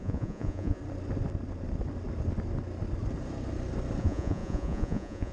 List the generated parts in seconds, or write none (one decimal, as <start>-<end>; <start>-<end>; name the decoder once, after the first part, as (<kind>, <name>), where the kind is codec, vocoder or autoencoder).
0.0-0.8 (vocoder, Vocos); 4.0-5.3